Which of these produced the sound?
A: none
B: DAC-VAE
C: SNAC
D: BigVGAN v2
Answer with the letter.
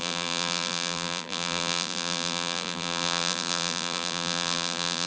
D